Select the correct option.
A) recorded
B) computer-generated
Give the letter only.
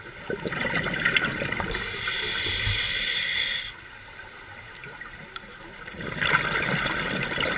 B